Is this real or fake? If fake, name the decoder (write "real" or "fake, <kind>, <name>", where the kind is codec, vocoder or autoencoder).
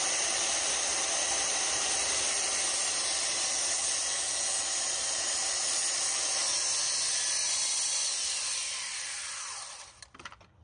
fake, vocoder, BigVGAN v2